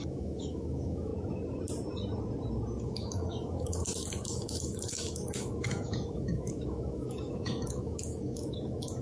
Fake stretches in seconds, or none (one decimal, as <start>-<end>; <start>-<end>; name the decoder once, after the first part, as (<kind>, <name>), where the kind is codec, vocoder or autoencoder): 0.0-1.1 (autoencoder, DAC-VAE); 2.8-9.0